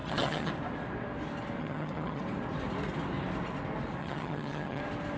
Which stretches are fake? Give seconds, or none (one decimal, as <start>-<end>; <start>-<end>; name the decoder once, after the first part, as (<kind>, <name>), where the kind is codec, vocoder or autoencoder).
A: 0.0-0.5 (vocoder, HiFi-GAN); 1.6-2.2; 4.0-4.8